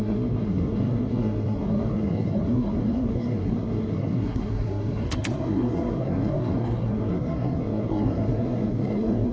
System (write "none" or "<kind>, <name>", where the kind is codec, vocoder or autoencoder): codec, SNAC